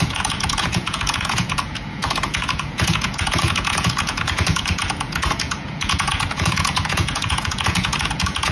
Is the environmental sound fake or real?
fake